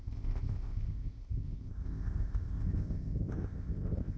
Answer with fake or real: fake